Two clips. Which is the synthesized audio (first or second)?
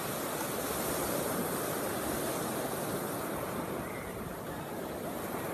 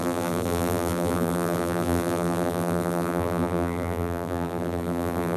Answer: second